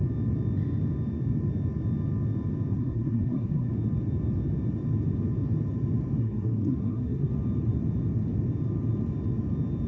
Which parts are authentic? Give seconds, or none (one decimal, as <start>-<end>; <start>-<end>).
0.0-2.7; 3.7-6.2; 7.3-9.9